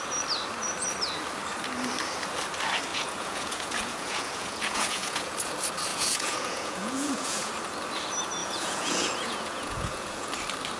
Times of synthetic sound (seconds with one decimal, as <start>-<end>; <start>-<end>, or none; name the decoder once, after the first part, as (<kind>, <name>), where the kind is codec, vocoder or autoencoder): 2.9-5.5 (vocoder, Vocos); 5.9-7.5; 8.4-10.3